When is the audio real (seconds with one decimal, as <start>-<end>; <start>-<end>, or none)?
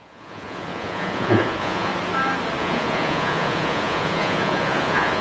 1.9-2.6